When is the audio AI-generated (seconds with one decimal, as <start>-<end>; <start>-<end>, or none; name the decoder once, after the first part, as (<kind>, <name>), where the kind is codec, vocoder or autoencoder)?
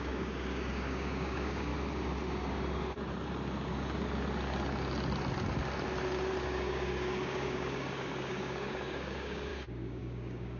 0.0-1.7 (codec, DAC); 6.4-10.6